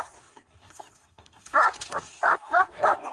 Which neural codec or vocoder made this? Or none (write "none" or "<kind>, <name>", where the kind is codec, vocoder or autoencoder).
codec, SNAC